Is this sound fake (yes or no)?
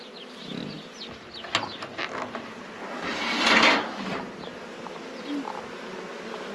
no